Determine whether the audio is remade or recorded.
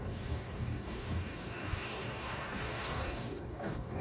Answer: remade